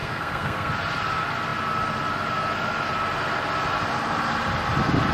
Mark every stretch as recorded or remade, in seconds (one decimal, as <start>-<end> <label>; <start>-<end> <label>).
0.0-0.7 remade; 0.7-5.1 recorded

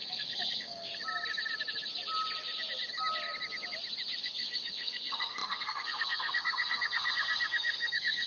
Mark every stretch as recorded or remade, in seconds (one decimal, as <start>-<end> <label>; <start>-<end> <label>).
0.0-0.9 remade; 0.9-4.2 recorded; 4.2-8.3 remade

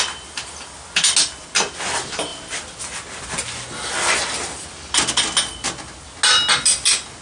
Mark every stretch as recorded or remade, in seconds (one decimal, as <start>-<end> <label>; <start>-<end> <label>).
0.0-7.2 recorded

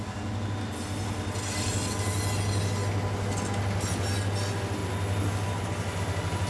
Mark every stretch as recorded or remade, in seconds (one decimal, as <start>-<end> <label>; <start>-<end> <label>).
0.0-6.5 recorded

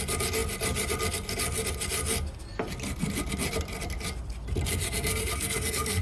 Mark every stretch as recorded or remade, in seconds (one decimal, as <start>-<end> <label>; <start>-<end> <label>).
0.0-4.8 recorded; 4.8-6.0 remade

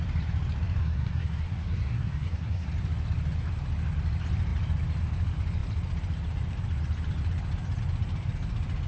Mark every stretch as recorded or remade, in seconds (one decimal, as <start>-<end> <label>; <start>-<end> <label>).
0.0-0.8 recorded; 0.8-2.7 remade; 2.7-8.9 recorded

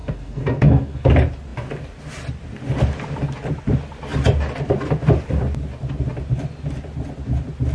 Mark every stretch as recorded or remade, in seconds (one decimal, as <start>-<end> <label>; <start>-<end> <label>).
0.0-1.1 remade; 1.1-7.7 recorded

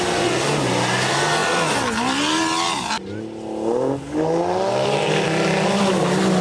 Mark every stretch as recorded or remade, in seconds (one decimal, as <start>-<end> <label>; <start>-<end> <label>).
0.0-6.4 recorded